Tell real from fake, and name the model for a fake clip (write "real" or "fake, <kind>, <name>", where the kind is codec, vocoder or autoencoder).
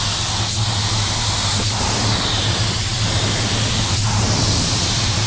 real